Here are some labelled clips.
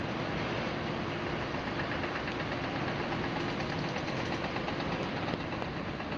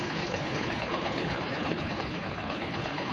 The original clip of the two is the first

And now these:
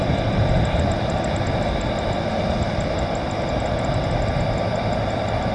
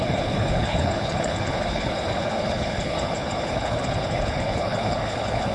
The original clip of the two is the first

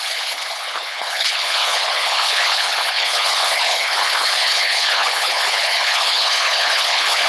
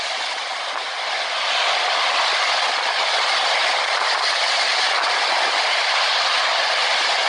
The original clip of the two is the second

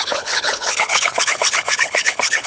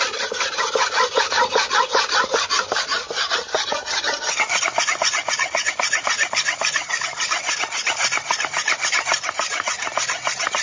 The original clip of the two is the second